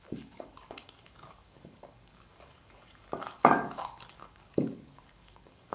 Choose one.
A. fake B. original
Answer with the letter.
A